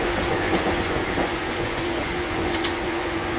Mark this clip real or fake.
fake